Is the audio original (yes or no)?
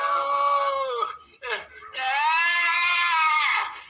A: yes